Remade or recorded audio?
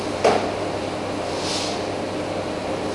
recorded